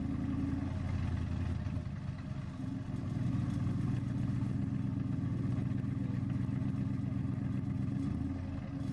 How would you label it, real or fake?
real